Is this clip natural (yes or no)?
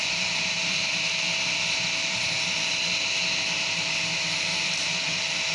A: yes